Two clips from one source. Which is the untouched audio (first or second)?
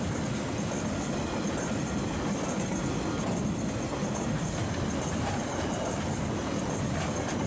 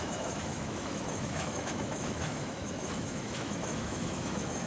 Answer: first